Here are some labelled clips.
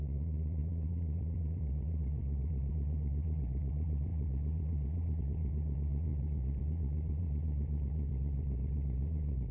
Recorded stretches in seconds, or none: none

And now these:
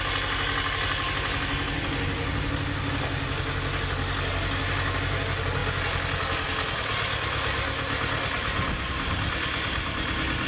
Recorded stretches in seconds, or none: 0.0-10.5

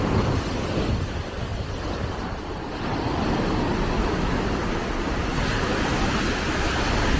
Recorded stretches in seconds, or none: 0.0-7.2

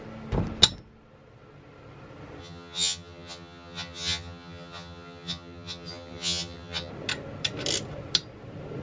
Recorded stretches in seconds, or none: 0.0-2.4; 6.9-8.8

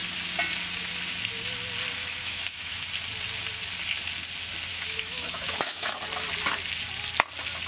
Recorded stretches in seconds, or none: 0.0-2.0; 2.9-4.7; 6.0-7.7

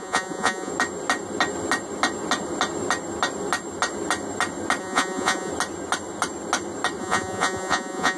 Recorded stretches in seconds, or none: 0.7-4.8; 5.5-7.0